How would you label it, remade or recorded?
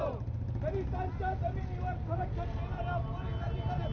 recorded